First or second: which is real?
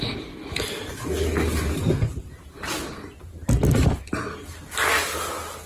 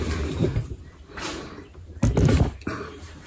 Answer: first